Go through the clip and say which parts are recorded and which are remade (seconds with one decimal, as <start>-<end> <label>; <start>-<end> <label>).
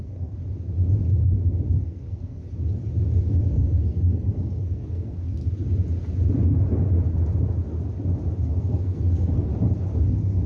0.0-0.4 remade; 0.4-1.8 recorded; 1.8-2.4 remade; 2.4-3.2 recorded; 3.2-5.4 remade; 5.4-8.4 recorded; 8.4-9.5 remade; 9.5-10.1 recorded; 10.1-10.5 remade